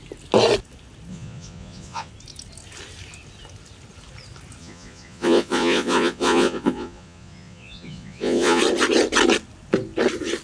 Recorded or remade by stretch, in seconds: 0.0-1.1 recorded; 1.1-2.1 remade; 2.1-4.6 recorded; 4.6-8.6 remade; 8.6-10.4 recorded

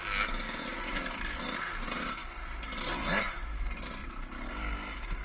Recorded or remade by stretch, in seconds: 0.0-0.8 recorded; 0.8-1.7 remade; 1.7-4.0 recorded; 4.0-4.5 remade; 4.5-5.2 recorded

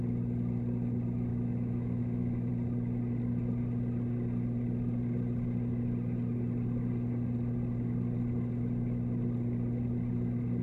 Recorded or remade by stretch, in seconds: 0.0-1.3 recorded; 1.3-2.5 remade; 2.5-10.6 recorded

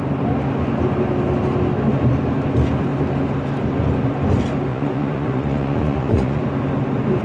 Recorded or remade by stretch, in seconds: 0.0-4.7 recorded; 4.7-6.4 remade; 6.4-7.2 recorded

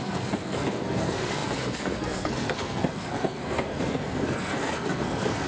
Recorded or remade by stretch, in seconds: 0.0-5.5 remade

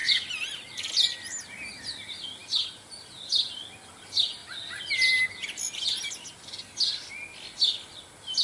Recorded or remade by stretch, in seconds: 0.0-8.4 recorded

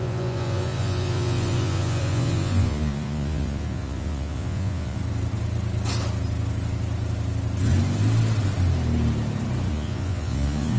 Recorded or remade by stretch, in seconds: 0.0-5.0 remade; 5.0-9.7 recorded; 9.7-10.8 remade